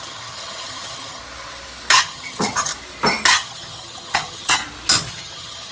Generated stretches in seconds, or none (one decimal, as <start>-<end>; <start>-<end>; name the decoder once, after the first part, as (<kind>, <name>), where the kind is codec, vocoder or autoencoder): 0.0-1.2 (vocoder, HiFi-GAN); 2.0-2.7; 3.3-4.6; 5.1-5.7